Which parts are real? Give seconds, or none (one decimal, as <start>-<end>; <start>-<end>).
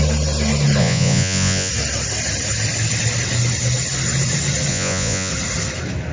0.0-0.8; 1.7-4.7; 5.3-6.1